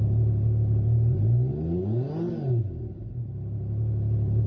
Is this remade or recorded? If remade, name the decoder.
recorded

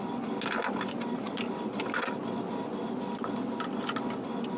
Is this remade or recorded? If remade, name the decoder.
recorded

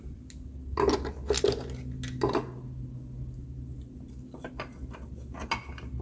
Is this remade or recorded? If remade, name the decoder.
recorded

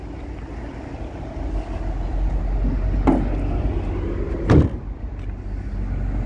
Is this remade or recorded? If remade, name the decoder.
recorded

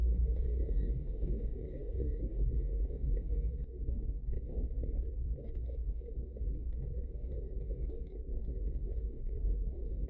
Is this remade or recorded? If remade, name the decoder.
remade, codec, DAC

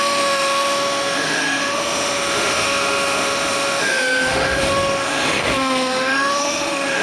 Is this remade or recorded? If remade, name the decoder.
remade, autoencoder, DAC-VAE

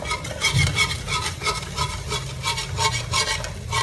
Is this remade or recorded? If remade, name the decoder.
recorded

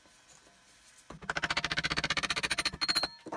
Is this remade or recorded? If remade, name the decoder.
recorded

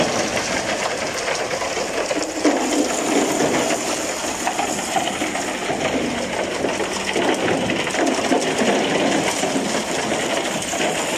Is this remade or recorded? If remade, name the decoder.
recorded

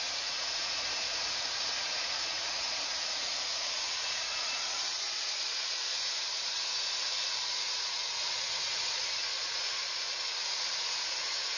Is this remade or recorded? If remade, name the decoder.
remade, vocoder, Vocos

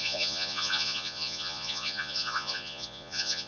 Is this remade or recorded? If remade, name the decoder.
remade, vocoder, Vocos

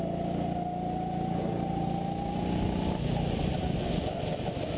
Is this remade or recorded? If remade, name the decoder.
recorded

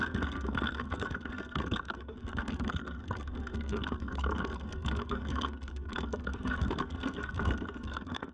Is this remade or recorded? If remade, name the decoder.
remade, codec, SNAC